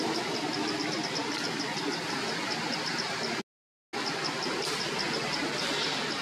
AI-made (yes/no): no